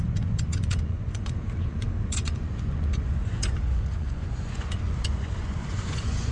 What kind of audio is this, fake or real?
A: fake